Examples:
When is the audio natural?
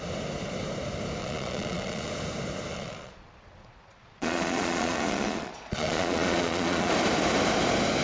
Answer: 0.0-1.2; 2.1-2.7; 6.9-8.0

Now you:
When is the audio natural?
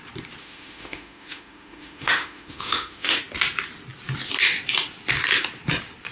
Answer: 0.0-0.4; 3.2-6.1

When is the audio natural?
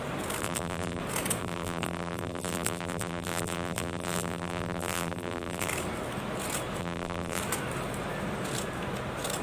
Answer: 0.0-0.4; 1.0-1.4; 5.7-6.8; 7.4-9.4